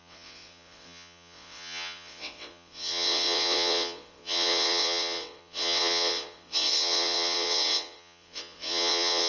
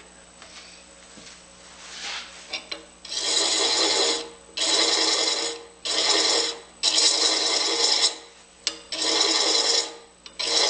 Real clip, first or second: second